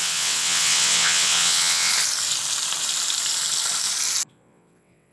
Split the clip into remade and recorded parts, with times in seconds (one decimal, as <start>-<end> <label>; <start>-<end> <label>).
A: 0.0-1.9 remade; 1.9-4.3 recorded; 4.3-5.1 remade